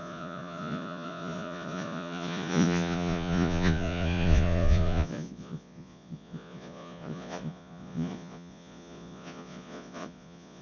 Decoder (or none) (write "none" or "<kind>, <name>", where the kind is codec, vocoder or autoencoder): vocoder, Vocos